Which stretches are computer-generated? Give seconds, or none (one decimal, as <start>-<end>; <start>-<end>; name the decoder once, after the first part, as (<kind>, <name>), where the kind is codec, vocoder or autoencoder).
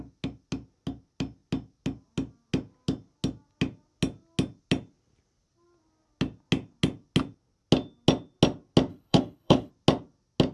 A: 8.9-9.7 (codec, HILCodec)